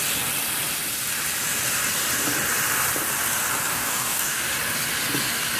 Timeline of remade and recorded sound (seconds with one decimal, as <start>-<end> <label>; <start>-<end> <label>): 0.0-3.7 recorded; 3.7-4.4 remade; 4.4-5.6 recorded